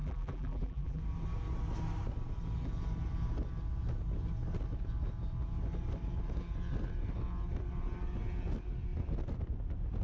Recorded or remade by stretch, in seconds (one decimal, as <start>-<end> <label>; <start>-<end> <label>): 0.0-1.0 remade; 1.0-10.0 recorded